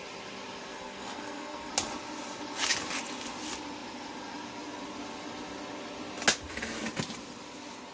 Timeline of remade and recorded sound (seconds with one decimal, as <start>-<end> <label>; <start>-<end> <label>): 0.0-0.7 recorded; 0.7-1.7 remade; 1.7-7.9 recorded